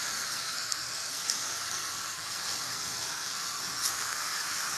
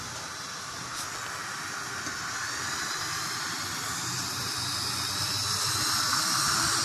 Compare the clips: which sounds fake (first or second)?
first